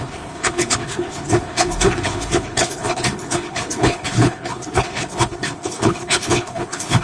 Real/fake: fake